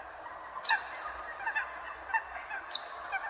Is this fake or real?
real